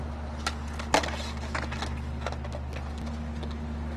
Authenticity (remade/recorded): recorded